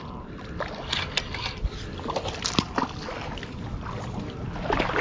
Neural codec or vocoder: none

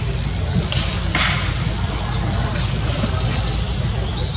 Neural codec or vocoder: none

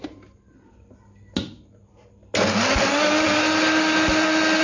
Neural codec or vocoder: none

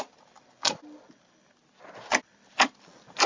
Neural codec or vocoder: none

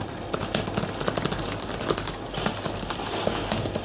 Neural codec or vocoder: none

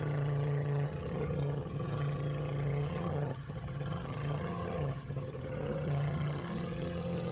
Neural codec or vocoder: vocoder, HiFi-GAN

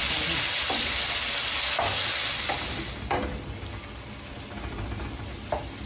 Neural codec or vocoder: none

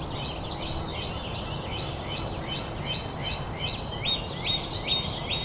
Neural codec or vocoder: none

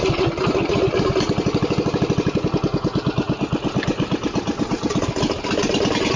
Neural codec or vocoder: none